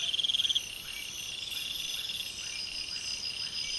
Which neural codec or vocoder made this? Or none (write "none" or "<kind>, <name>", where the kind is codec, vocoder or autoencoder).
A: none